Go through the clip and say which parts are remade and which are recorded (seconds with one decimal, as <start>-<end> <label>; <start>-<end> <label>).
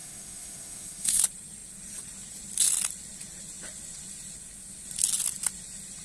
0.0-1.2 remade; 1.2-6.0 recorded